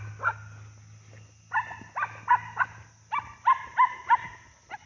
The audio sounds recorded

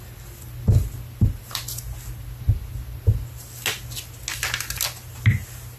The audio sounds recorded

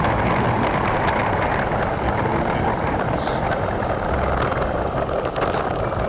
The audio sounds recorded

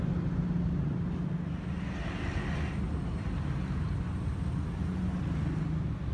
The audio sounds recorded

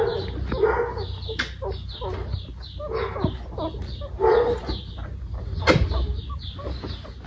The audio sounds recorded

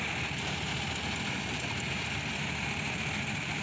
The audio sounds recorded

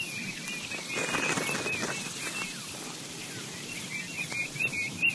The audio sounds remade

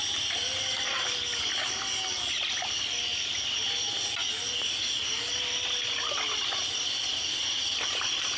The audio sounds recorded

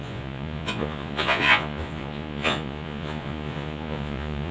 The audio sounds remade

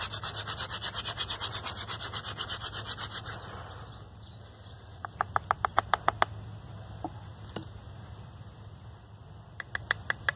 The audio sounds recorded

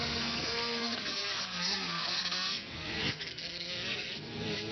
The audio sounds remade